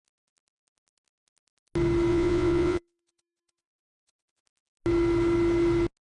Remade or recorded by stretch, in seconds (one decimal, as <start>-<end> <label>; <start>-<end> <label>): 0.0-2.1 recorded; 2.1-4.4 remade; 4.4-6.0 recorded